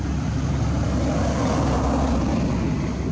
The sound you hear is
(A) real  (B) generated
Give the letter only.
A